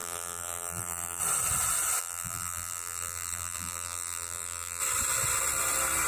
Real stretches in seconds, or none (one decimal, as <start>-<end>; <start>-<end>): 1.2-2.0; 4.8-6.1